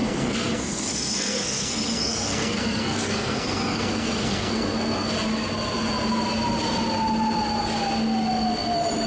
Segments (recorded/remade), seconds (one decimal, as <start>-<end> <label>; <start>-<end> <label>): 0.0-5.1 remade; 5.1-9.1 recorded